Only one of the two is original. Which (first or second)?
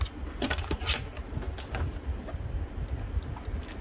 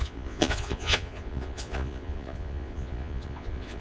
first